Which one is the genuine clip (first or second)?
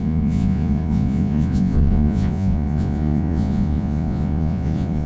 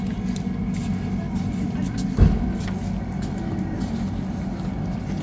second